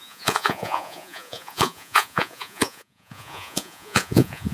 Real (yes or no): no